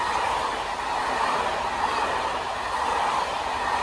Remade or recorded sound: recorded